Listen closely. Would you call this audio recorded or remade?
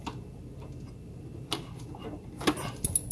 remade